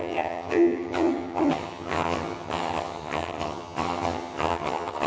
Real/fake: fake